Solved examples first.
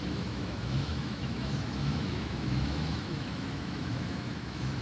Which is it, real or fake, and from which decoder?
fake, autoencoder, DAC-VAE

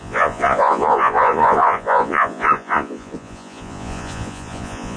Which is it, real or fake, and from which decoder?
fake, vocoder, Vocos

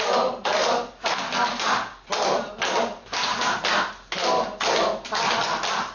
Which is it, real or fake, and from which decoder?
real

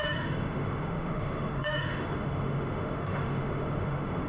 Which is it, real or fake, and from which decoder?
fake, autoencoder, DAC-VAE